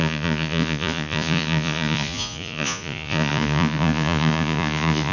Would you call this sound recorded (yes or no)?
no